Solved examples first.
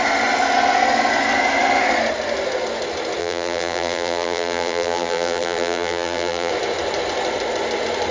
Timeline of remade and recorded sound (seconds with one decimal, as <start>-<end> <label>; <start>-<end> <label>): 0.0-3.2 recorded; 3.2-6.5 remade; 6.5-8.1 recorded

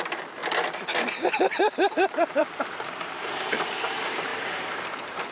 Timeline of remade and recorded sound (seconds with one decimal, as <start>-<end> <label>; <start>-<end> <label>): 0.0-0.4 remade; 0.4-1.0 recorded; 1.0-5.3 remade

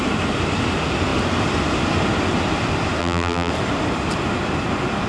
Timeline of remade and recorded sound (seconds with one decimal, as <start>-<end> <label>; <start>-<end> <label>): 0.0-3.0 recorded; 3.0-3.5 remade; 3.5-5.1 recorded